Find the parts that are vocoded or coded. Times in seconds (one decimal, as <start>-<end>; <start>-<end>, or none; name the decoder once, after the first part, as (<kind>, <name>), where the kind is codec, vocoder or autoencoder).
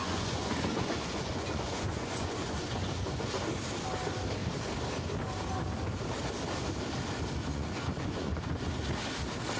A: 0.0-3.3 (vocoder, Vocos); 7.5-8.7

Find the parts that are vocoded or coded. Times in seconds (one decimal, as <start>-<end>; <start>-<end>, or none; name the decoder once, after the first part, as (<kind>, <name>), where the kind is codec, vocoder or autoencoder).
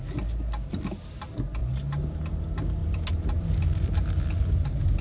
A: none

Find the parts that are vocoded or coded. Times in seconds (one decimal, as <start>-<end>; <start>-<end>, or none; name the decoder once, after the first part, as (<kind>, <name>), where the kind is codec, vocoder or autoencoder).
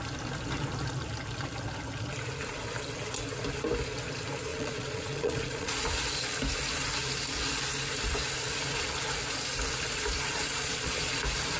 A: 4.5-5.9 (vocoder, Vocos); 10.5-11.1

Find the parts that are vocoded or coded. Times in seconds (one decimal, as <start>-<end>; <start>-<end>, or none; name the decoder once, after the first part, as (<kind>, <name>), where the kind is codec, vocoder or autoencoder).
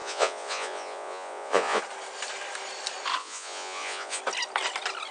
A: 0.0-1.8 (vocoder, Vocos); 3.2-4.2